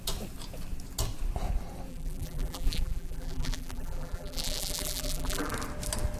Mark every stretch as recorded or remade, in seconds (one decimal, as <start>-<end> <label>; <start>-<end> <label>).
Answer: 0.0-1.9 recorded; 1.9-5.5 remade; 5.5-6.2 recorded